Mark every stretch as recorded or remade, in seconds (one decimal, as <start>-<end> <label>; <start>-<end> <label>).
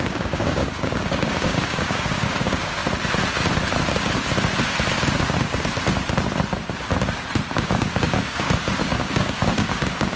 0.0-2.8 remade; 2.8-7.5 recorded; 7.5-10.2 remade